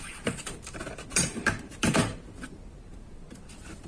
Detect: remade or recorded remade